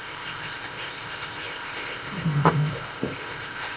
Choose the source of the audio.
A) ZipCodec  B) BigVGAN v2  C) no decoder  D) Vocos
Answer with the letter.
A